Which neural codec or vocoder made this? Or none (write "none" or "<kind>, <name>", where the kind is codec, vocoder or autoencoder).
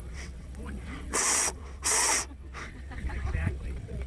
vocoder, WaveNeXt